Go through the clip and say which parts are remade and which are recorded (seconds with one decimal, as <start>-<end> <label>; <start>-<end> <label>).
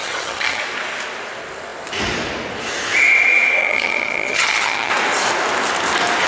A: 0.0-0.6 remade; 0.6-3.6 recorded; 3.6-4.9 remade; 4.9-6.3 recorded